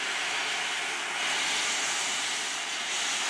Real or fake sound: real